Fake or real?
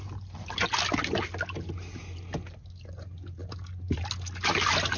real